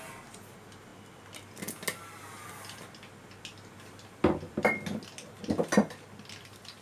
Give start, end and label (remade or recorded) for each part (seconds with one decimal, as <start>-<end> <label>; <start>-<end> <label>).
0.0-6.8 recorded